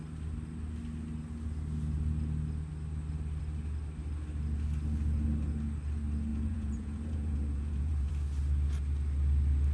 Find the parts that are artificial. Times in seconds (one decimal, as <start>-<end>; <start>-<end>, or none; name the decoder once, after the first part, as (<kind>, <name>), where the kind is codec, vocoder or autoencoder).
6.3-8.1 (vocoder, Vocos)